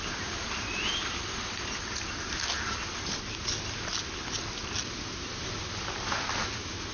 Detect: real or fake real